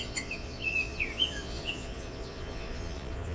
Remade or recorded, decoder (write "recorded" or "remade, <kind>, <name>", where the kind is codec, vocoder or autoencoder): remade, vocoder, Vocos